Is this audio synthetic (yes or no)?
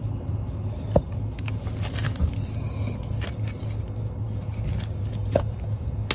no